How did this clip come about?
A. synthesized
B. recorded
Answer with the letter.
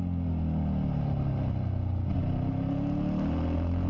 B